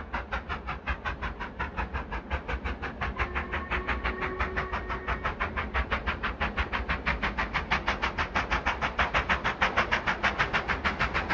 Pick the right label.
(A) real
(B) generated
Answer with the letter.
A